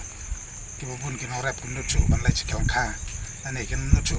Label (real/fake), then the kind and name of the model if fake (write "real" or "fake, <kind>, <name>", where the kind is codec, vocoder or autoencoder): real